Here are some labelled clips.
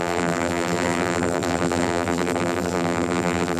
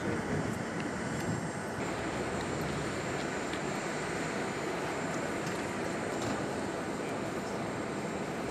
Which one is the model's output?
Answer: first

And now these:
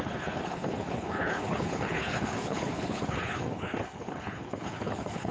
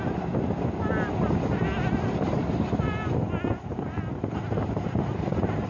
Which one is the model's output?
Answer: first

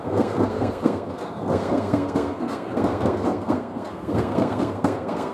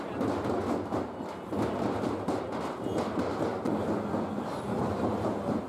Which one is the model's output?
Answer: first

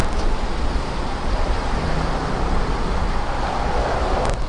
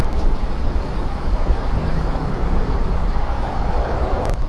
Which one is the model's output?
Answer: second